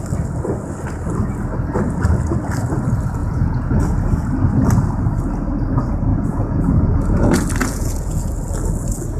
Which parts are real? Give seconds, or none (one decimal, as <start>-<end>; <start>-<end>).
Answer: 0.0-3.2; 3.8-6.1; 7.0-7.6; 8.3-9.2

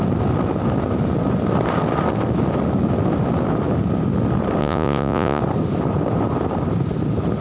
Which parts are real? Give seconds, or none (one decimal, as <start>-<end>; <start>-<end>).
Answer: 0.0-4.6; 5.4-7.4